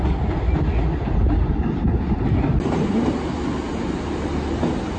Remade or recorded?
recorded